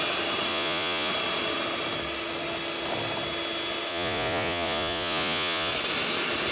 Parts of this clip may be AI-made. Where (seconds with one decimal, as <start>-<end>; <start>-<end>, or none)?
0.5-1.1; 3.9-5.7